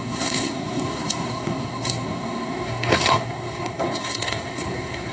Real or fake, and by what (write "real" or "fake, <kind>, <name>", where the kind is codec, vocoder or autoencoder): fake, codec, SNAC